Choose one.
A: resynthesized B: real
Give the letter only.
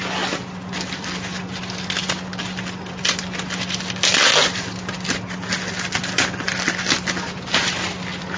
B